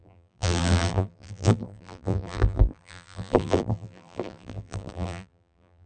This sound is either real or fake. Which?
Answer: fake